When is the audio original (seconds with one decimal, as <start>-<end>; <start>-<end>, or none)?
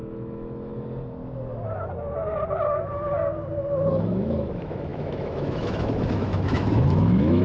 0.7-3.9